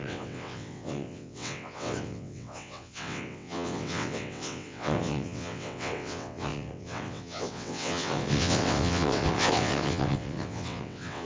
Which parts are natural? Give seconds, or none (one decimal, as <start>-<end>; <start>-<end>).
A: none